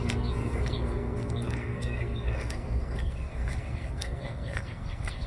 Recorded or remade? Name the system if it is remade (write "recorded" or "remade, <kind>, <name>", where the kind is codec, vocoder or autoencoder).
remade, codec, SNAC